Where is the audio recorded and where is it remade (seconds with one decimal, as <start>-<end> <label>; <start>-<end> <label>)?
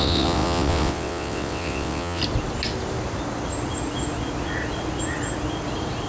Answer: 0.0-2.2 remade; 2.2-6.1 recorded